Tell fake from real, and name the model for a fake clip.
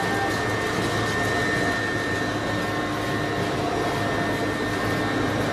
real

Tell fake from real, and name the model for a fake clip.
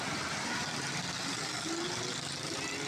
real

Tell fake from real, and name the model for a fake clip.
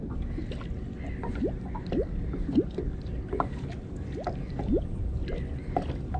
real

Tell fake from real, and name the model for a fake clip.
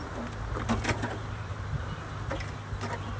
real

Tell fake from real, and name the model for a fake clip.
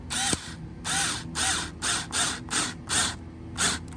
real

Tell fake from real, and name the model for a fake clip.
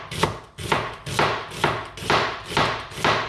real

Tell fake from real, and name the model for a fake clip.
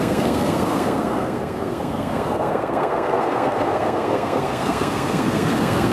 fake, codec, SNAC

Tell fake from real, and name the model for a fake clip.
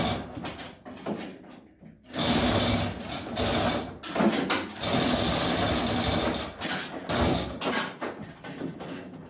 real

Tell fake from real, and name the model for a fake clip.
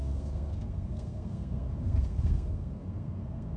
fake, codec, SNAC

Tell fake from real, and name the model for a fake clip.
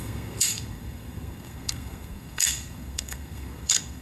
fake, codec, SNAC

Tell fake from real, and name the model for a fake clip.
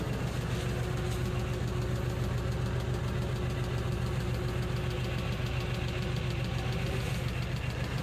real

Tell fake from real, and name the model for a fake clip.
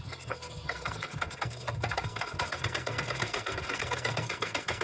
fake, codec, SNAC